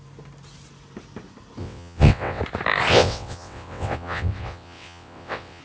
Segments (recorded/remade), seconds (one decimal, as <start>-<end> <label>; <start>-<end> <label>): 0.0-1.6 recorded; 1.6-2.4 remade; 2.4-2.9 recorded; 2.9-5.6 remade